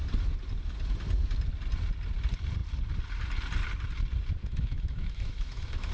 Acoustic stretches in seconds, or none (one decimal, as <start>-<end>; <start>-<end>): 0.0-4.4